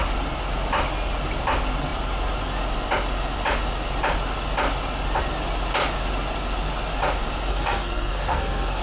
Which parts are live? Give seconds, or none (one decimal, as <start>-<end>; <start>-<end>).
0.0-7.5